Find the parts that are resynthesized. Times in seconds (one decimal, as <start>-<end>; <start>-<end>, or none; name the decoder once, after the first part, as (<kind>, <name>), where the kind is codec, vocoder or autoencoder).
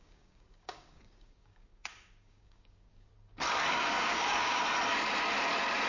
0.0-3.1 (codec, DAC); 3.7-4.6